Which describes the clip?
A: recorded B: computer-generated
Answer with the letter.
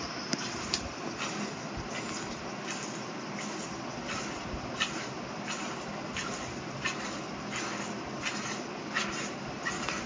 A